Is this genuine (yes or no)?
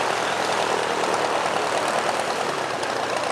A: no